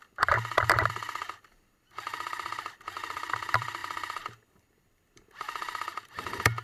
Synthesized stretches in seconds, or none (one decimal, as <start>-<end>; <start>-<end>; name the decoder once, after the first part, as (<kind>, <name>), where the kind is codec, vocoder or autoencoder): 0.0-6.6 (vocoder, BigVGAN v2)